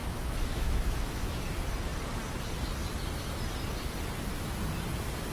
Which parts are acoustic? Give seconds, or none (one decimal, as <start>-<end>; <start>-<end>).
1.4-5.3